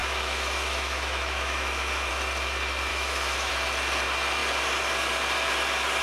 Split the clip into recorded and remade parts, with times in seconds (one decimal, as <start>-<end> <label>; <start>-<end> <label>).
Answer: 0.0-2.1 remade; 2.1-2.9 recorded; 2.9-3.5 remade; 3.5-6.0 recorded